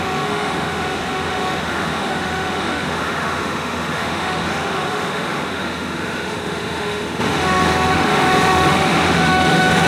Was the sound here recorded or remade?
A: remade